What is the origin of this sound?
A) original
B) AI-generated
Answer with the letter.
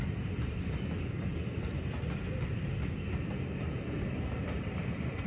A